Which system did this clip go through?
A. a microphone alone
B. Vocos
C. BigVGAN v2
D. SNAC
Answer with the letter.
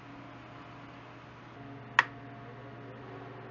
A